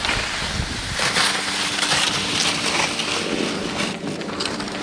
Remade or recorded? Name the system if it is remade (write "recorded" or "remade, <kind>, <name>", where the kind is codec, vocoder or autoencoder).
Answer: recorded